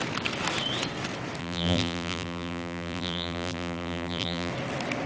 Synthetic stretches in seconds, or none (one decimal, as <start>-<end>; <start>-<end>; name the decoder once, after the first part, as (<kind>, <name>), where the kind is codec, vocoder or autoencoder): 1.4-4.5 (vocoder, BigVGAN v2)